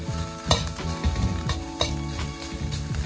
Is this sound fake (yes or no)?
no